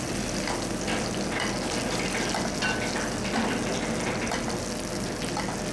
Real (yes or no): yes